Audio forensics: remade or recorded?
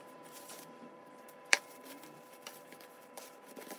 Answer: remade